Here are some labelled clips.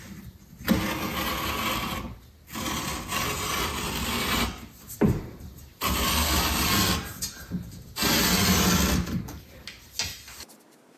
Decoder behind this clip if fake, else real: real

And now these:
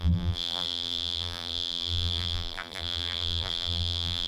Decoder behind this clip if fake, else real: fake, vocoder, BigVGAN v2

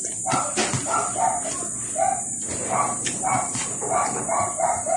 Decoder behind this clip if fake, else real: real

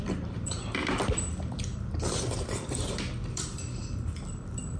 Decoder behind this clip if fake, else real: fake, vocoder, BigVGAN v2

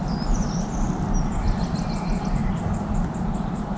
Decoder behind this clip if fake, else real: fake, vocoder, BigVGAN v2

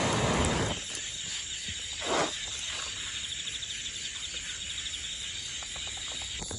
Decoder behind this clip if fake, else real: real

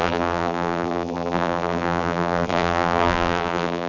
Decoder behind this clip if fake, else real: fake, vocoder, BigVGAN v2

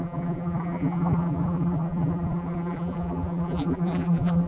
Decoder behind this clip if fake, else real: fake, vocoder, BigVGAN v2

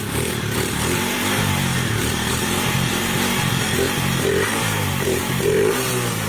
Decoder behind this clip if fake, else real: fake, vocoder, BigVGAN v2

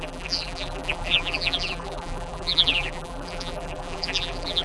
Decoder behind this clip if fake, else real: fake, vocoder, BigVGAN v2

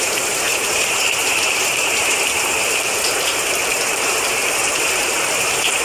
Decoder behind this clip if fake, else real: fake, vocoder, BigVGAN v2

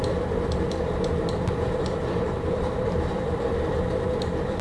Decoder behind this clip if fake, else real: fake, vocoder, BigVGAN v2